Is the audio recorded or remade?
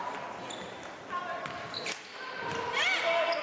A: recorded